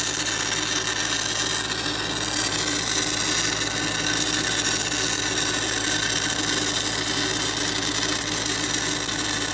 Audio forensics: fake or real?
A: real